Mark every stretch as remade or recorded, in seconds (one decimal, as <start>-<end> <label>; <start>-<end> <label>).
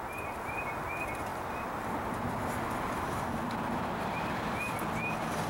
0.0-5.5 recorded